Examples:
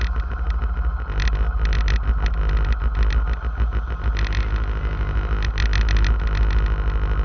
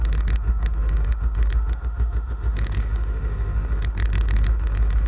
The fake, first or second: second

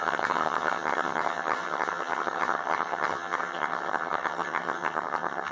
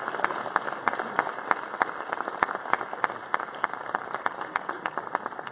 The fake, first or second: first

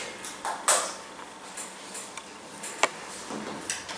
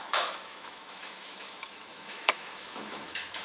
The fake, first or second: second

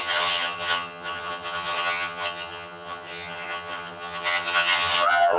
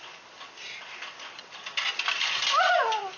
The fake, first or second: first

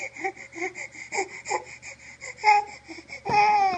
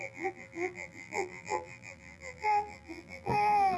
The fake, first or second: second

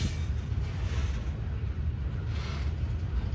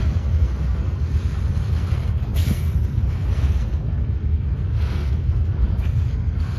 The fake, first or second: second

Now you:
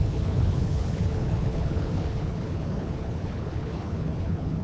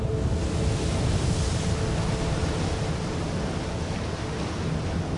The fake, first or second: first